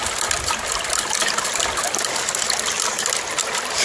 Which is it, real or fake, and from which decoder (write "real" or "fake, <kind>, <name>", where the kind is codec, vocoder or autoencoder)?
real